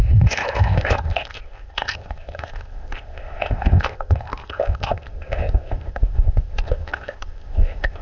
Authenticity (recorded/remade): remade